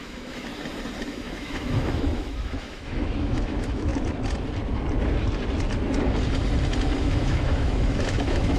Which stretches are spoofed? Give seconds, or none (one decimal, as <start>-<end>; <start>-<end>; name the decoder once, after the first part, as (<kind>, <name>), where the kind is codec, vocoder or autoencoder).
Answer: 0.0-0.5 (autoencoder, DAC-VAE); 1.1-3.9; 7.0-8.6